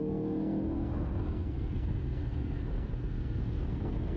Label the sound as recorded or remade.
remade